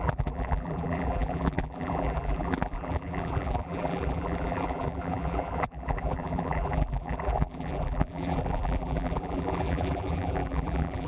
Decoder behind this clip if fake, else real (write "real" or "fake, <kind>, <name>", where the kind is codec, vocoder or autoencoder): fake, vocoder, BigVGAN v2